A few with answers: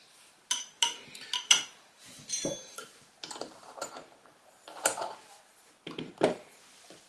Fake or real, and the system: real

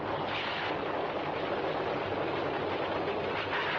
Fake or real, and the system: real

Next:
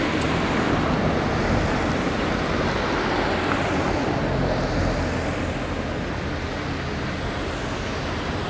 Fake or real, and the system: real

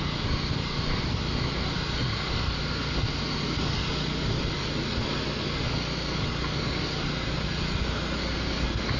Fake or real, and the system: real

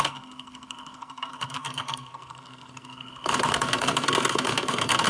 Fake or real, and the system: fake, codec, SNAC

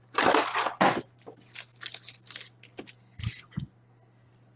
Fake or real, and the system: real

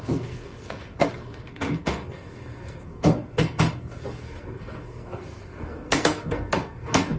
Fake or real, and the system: fake, codec, SNAC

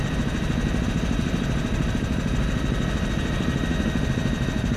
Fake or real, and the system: real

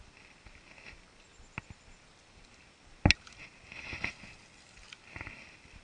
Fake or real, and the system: real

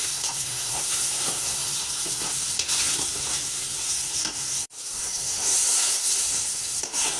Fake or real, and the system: fake, codec, SNAC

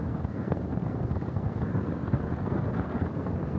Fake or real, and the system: fake, codec, SNAC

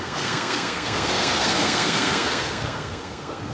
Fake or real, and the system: fake, codec, SNAC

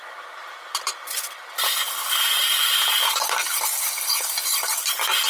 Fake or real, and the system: real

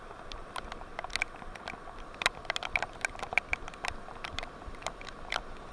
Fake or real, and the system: real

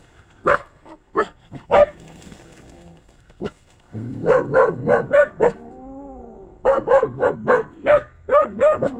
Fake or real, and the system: fake, codec, SNAC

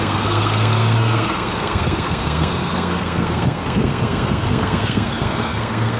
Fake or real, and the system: fake, codec, SNAC